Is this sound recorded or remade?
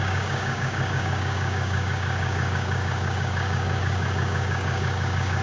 remade